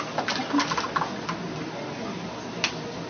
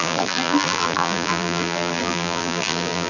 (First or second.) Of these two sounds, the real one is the first